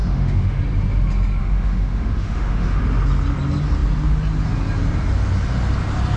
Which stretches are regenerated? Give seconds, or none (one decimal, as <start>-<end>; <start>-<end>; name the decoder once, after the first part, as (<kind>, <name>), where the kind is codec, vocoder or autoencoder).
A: 0.0-0.6 (autoencoder, DAC-VAE); 1.4-2.8